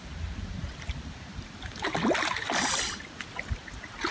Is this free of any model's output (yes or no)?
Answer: yes